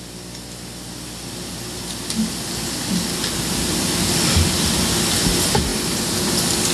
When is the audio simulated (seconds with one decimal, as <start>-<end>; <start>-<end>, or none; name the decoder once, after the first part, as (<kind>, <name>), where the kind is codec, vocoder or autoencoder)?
none